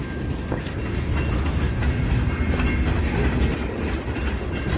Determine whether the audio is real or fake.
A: real